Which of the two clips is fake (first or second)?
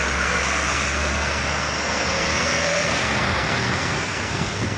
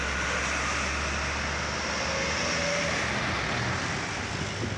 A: first